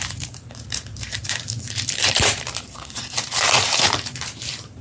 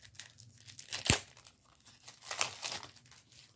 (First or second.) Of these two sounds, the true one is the second